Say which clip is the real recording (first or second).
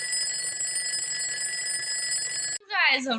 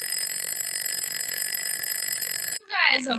first